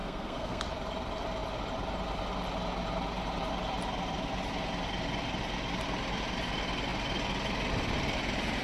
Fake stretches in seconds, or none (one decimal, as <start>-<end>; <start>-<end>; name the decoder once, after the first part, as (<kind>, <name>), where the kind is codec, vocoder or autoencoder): 0.0-0.6 (codec, SNAC)